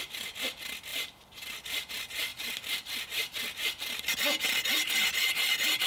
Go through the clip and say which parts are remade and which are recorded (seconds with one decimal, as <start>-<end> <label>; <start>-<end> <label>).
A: 0.0-5.9 recorded